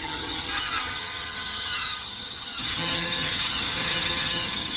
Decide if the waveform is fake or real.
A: fake